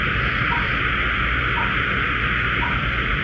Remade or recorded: remade